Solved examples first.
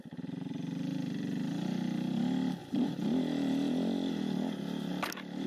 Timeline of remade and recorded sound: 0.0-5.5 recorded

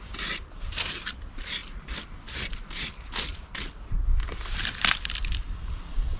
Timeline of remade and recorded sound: 0.0-6.2 remade